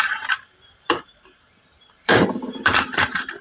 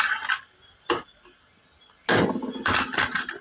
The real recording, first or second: second